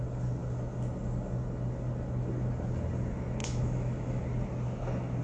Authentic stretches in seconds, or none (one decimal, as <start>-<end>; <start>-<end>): 0.0-3.4; 4.2-5.2